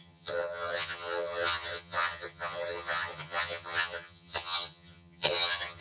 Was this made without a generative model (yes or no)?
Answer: no